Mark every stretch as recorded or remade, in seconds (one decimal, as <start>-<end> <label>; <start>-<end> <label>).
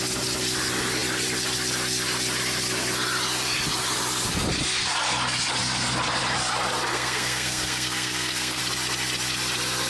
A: 0.0-6.9 recorded; 6.9-8.6 remade; 8.6-9.9 recorded